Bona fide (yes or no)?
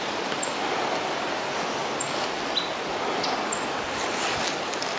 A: yes